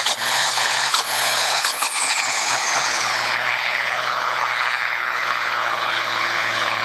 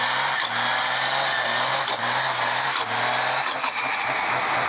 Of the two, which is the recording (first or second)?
second